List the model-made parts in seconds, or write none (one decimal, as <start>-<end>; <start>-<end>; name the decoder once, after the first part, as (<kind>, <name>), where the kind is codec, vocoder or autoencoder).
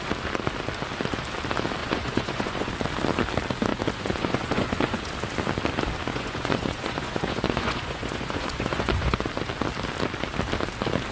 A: 1.8-2.7 (vocoder, Vocos); 3.7-5.1; 6.1-9.3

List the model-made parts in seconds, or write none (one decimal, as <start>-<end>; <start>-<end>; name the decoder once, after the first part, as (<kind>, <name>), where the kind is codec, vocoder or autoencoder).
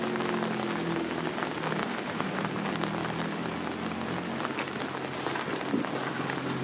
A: 1.8-2.4 (autoencoder, DAC-VAE)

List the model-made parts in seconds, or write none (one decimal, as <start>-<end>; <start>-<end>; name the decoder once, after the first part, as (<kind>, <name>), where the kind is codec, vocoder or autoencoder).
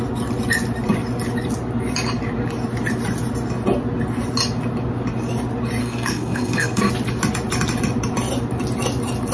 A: 5.8-6.9 (codec, SNAC)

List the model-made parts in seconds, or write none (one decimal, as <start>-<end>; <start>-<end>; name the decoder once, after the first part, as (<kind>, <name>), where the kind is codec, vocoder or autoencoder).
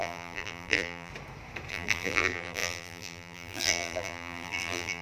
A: 0.0-1.1 (vocoder, BigVGAN v2); 1.7-5.0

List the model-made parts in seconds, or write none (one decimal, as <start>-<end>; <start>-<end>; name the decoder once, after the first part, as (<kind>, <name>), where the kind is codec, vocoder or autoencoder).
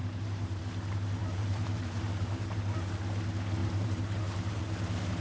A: 0.0-0.6 (vocoder, BigVGAN v2); 1.2-3.0; 3.6-4.6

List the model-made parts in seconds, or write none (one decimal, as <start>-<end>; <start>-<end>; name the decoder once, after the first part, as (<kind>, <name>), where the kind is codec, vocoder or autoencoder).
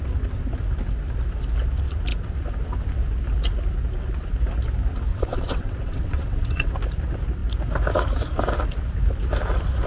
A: 5.1-6.7 (vocoder, WaveNeXt)